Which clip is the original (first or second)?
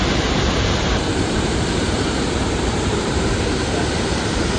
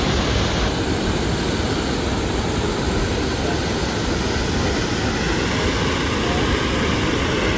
second